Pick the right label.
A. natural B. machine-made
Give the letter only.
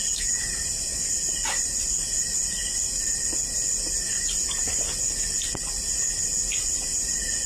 A